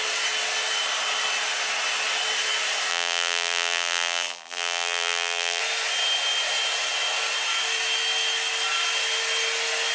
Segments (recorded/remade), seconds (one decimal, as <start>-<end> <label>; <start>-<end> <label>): 0.0-2.9 recorded; 2.9-5.6 remade; 5.6-9.9 recorded